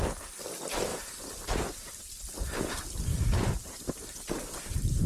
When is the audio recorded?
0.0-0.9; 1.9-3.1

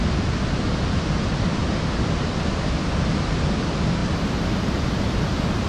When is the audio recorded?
1.6-3.1

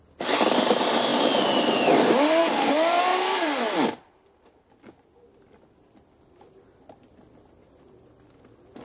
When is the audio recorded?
0.0-3.1; 4.1-8.8